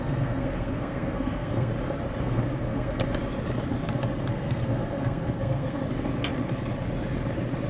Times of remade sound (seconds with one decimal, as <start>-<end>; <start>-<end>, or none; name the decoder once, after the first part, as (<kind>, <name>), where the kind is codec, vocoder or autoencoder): 0.0-1.7 (codec, SNAC); 2.2-3.0; 4.2-5.8